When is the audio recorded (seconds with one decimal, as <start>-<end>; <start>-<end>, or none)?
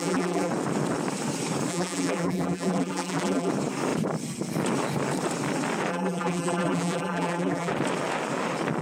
0.5-1.7; 3.5-5.9; 7.7-8.8